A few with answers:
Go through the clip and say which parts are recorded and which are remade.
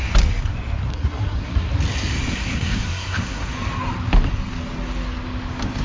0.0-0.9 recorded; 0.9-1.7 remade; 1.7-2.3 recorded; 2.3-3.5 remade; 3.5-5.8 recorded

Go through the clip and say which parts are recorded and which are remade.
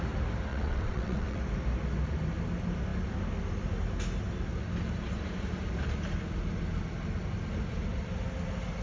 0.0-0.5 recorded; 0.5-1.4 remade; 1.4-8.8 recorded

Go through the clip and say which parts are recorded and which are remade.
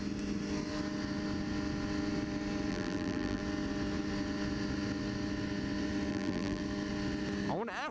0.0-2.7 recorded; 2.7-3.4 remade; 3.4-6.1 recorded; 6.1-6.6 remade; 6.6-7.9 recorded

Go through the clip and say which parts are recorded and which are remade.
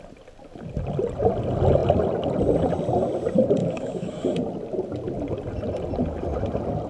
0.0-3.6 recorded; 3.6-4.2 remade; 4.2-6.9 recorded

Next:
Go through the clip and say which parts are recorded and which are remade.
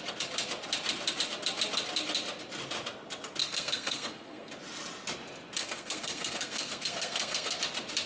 0.0-3.4 recorded; 3.4-4.5 remade; 4.5-5.6 recorded; 5.6-7.6 remade; 7.6-8.1 recorded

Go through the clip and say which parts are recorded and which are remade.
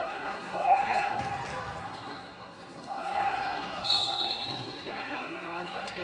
0.0-1.2 remade; 1.2-1.8 recorded; 1.8-6.0 remade